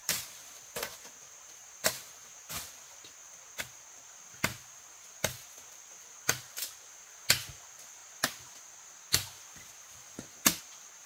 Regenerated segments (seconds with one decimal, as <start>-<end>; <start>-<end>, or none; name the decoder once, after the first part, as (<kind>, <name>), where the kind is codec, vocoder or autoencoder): 0.0-1.1 (vocoder, BigVGAN v2); 1.6-2.7